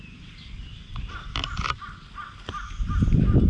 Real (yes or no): yes